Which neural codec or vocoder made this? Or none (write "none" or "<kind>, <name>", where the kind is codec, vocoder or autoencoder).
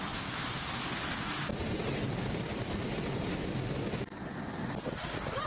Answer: none